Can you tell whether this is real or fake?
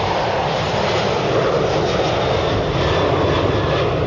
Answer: real